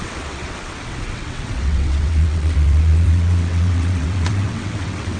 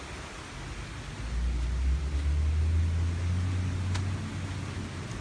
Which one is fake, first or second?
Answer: first